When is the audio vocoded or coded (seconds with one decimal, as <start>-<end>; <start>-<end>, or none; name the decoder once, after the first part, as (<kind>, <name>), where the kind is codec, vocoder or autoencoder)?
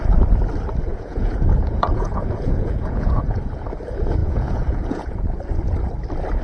0.9-3.4 (vocoder, Vocos); 4.2-5.2